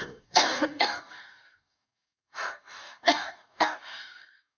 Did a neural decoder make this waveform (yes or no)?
yes